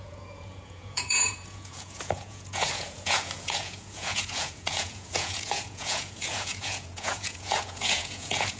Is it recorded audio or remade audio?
remade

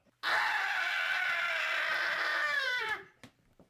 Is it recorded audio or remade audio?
recorded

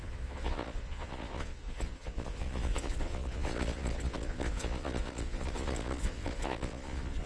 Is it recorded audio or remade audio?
remade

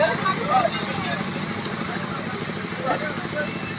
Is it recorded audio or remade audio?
recorded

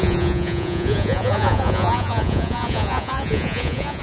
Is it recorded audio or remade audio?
remade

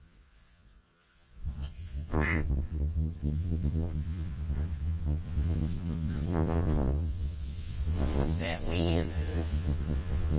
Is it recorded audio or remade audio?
remade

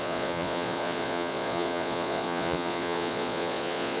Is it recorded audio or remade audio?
remade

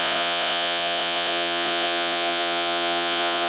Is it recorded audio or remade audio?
remade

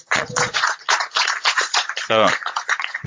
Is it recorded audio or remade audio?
remade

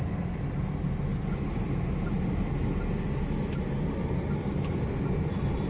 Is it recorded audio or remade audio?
recorded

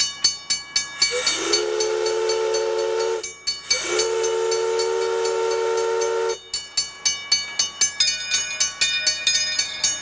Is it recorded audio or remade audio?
recorded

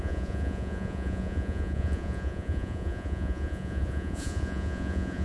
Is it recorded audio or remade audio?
remade